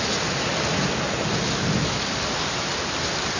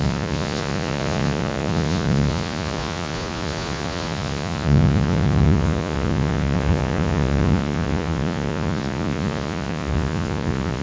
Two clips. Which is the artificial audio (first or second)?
second